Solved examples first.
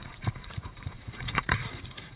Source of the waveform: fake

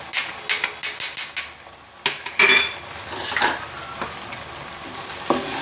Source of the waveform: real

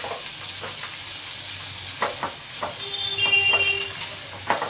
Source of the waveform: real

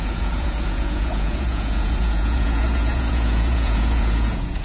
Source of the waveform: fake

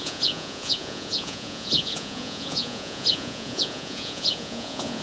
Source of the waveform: fake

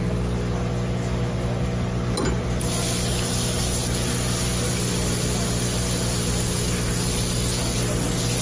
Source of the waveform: real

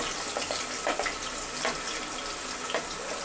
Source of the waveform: real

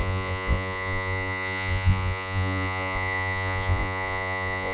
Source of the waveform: fake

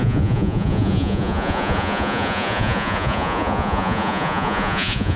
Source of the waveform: fake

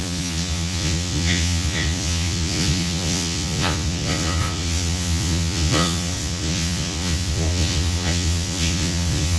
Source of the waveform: fake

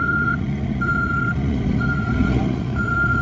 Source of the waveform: fake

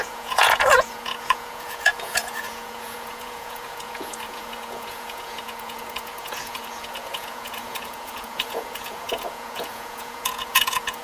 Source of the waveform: fake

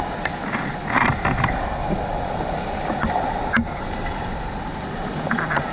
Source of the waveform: real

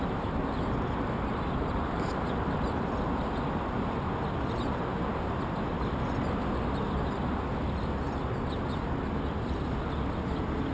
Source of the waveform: real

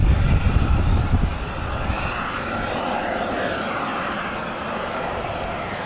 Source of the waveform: real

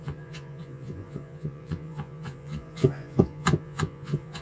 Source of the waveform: fake